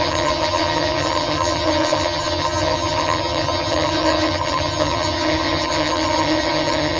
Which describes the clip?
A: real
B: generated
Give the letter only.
B